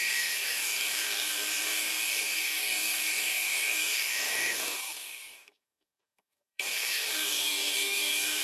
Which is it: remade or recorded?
remade